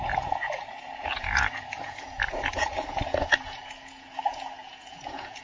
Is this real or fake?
fake